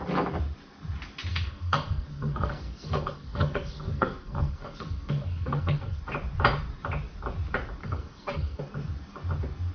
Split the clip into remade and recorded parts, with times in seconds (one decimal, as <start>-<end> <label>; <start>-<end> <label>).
0.0-1.3 recorded; 1.3-6.0 remade; 6.0-7.8 recorded; 7.8-8.6 remade; 8.6-9.7 recorded